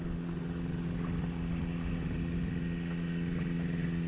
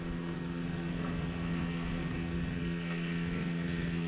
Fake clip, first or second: second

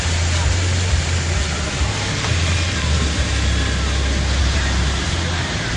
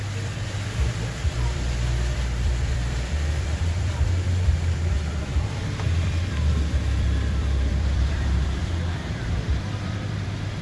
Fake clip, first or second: second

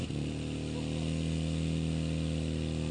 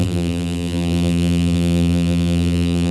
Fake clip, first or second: second